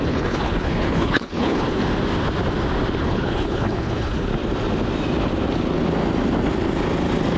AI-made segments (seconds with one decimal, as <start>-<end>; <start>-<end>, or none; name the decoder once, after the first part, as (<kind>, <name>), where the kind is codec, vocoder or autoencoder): 0.0-1.8 (codec, HILCodec); 3.0-4.3